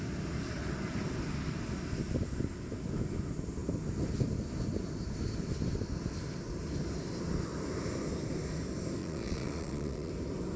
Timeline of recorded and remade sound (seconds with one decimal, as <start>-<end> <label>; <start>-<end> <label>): 0.0-9.0 recorded; 9.0-10.1 remade; 10.1-10.6 recorded